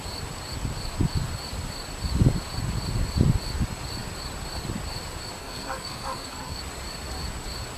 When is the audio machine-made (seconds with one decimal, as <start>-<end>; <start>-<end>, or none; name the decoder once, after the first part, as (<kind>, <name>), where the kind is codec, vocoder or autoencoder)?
5.4-6.6 (codec, SNAC)

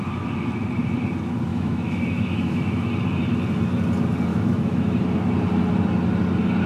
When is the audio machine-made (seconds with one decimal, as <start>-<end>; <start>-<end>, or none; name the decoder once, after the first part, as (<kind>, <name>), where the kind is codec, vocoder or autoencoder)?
1.5-2.9 (autoencoder, DAC-VAE); 4.3-5.0

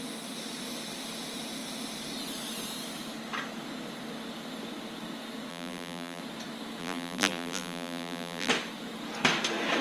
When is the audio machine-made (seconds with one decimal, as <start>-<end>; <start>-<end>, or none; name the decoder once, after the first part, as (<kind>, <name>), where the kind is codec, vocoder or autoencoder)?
5.5-6.2 (vocoder, BigVGAN v2); 6.8-8.5

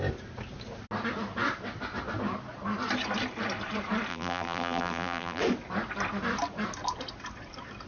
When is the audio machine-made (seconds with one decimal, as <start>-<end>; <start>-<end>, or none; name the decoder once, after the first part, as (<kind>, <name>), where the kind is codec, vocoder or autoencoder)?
4.1-5.4 (vocoder, BigVGAN v2)

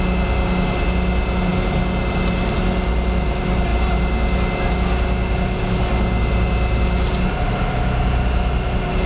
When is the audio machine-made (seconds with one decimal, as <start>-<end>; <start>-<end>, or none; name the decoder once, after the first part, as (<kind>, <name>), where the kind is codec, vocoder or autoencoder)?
none